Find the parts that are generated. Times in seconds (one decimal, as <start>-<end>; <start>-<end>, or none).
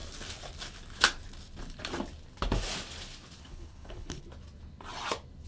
3.4-4.2